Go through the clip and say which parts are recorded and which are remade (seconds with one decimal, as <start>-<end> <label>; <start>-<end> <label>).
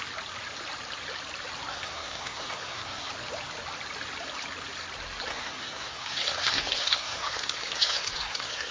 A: 0.0-1.7 recorded; 1.7-3.1 remade; 3.1-5.3 recorded; 5.3-8.7 remade